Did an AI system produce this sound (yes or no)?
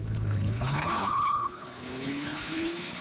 yes